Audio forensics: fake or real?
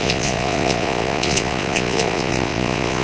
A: fake